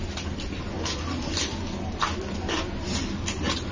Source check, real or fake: real